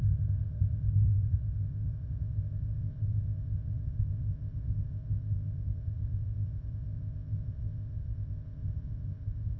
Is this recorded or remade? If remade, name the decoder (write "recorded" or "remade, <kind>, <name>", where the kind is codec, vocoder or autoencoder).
remade, codec, ZipCodec